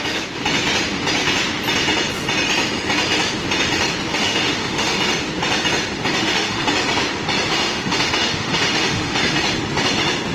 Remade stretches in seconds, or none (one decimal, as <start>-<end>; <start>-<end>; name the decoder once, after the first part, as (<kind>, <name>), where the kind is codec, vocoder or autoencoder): 4.1-5.0 (autoencoder, DAC-VAE); 6.2-6.7; 7.5-9.2